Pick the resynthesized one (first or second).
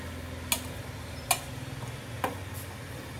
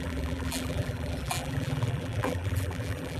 second